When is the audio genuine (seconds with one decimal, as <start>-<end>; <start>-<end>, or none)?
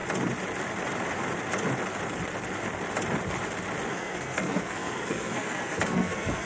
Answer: 0.0-3.9